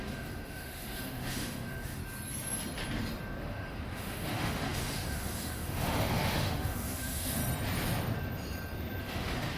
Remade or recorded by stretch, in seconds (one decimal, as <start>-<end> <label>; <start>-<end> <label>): 0.0-2.0 remade; 2.0-3.4 recorded; 3.4-7.4 remade; 7.4-9.0 recorded; 9.0-9.6 remade